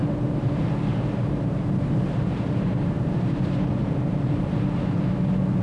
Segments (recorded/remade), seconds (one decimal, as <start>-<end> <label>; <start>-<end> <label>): 0.0-3.4 remade; 3.4-3.8 recorded; 3.8-5.0 remade; 5.0-5.6 recorded